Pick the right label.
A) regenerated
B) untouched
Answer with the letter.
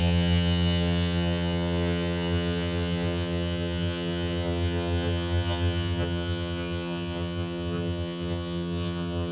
A